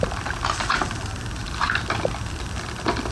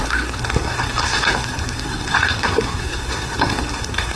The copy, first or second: second